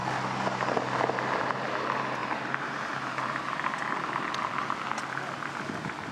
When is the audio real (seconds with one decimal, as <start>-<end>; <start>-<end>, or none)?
0.0-2.2; 4.2-6.1